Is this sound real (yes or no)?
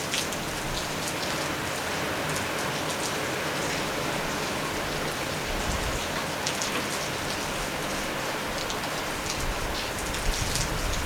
yes